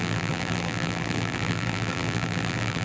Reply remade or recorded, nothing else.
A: remade